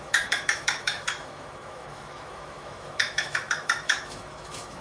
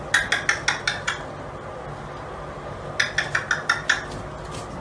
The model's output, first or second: first